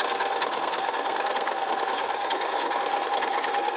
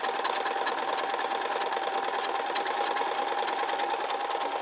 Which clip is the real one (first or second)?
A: second